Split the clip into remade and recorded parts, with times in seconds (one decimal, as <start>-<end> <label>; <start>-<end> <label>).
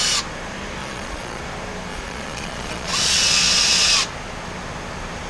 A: 0.0-0.8 recorded; 0.8-1.4 remade; 1.4-1.9 recorded; 1.9-3.9 remade; 3.9-5.3 recorded